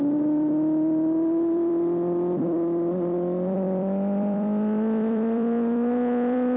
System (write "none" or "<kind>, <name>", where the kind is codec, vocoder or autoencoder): vocoder, BigVGAN v2